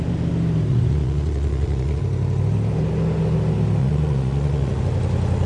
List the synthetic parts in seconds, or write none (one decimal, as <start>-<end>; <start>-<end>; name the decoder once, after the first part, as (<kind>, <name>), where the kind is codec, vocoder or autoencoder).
0.7-2.0 (vocoder, Vocos); 3.8-4.8